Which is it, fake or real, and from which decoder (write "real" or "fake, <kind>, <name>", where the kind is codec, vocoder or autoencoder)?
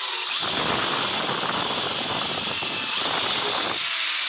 real